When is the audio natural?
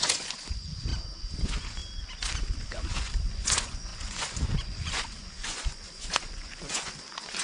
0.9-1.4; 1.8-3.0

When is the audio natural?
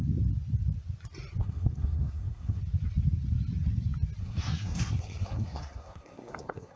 0.0-1.4; 2.6-4.2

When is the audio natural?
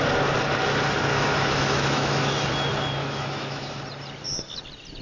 0.0-1.1; 2.5-3.0; 3.8-5.0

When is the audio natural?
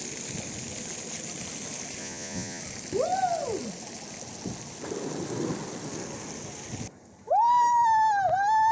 0.0-2.0; 2.6-8.7